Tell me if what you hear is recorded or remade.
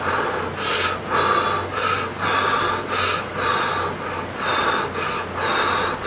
recorded